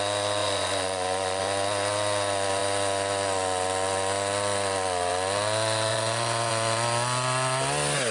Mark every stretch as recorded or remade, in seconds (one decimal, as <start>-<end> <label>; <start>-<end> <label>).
0.0-0.4 recorded; 0.4-1.4 remade; 1.4-5.9 recorded; 5.9-6.5 remade; 6.5-8.1 recorded